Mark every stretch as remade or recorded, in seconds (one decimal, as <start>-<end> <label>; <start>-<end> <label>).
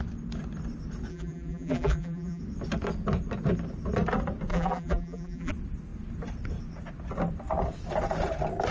0.0-1.1 recorded; 1.1-2.4 remade; 2.4-4.5 recorded; 4.5-5.5 remade; 5.5-8.7 recorded